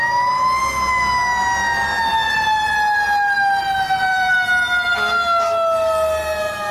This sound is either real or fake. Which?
real